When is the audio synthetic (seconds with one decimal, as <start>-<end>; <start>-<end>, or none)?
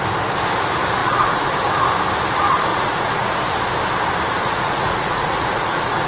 1.0-1.5; 2.7-3.3; 4.4-6.1